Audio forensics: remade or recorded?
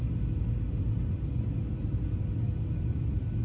recorded